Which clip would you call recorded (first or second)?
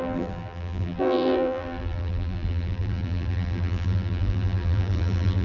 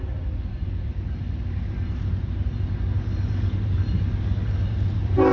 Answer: second